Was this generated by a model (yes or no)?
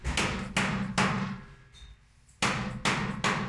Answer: no